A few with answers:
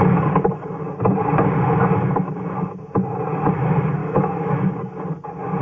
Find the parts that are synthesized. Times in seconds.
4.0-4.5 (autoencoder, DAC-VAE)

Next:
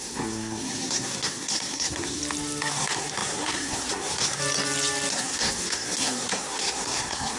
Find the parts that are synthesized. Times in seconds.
0.0-2.2 (codec, SNAC); 2.7-4.4; 5.1-7.4

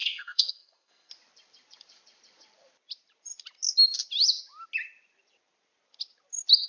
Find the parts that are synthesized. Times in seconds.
0.0-1.1 (codec, SNAC)

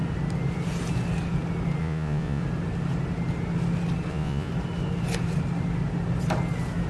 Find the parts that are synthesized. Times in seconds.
1.8-2.4 (vocoder, Vocos); 4.1-4.5